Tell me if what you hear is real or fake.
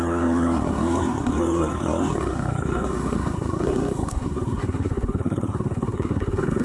fake